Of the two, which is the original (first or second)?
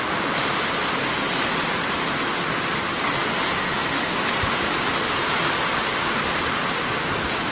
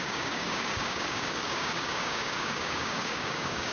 first